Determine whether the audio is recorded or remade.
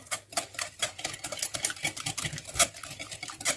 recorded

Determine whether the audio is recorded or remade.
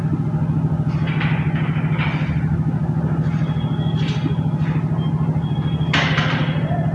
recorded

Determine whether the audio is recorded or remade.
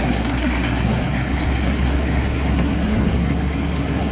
remade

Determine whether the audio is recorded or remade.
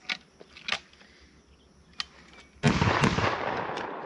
recorded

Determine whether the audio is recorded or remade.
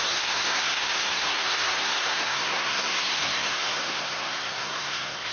remade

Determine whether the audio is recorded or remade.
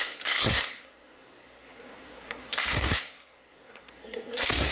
remade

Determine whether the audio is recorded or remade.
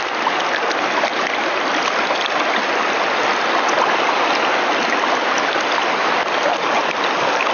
recorded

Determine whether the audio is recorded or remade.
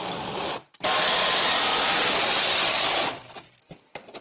recorded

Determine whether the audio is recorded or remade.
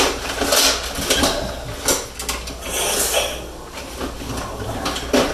recorded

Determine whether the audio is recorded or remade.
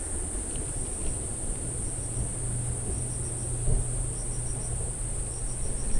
recorded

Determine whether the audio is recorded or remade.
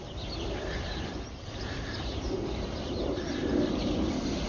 recorded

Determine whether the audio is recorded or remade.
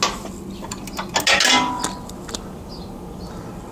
recorded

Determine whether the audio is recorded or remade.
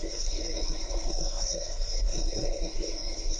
remade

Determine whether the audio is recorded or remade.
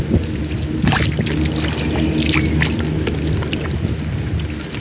recorded